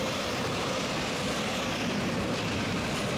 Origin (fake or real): real